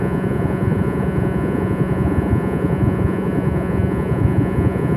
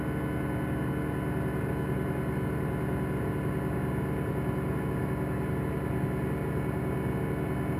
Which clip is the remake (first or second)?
first